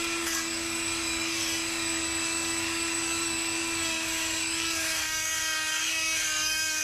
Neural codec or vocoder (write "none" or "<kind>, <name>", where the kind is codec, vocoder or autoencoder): codec, DAC